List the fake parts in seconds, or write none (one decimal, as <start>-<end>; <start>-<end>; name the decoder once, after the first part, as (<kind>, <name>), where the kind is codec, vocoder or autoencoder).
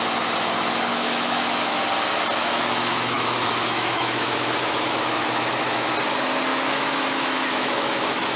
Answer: 0.9-1.8 (autoencoder, DAC-VAE); 2.4-5.9; 6.5-8.4